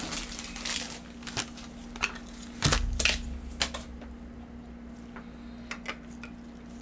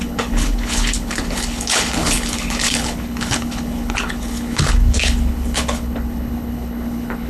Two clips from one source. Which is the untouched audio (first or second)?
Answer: first